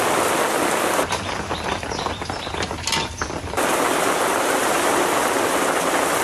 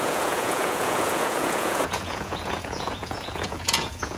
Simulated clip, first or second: second